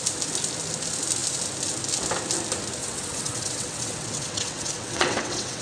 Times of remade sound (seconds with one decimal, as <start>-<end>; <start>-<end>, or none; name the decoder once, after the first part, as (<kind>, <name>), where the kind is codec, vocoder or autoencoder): 2.8-5.6 (vocoder, WaveNeXt)